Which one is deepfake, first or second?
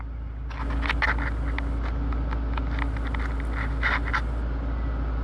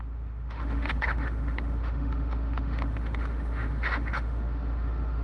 second